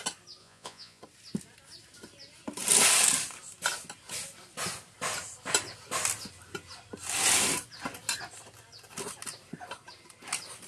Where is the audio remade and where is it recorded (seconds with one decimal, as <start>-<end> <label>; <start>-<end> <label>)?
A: 0.0-0.4 recorded; 0.4-1.0 remade; 1.0-10.7 recorded